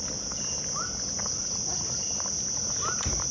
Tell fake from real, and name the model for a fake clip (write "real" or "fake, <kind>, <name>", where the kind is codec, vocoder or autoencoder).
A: real